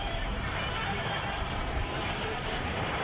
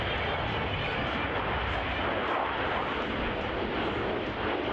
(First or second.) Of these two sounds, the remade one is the first